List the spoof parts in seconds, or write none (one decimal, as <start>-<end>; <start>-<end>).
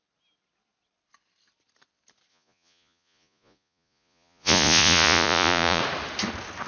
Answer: 2.3-5.8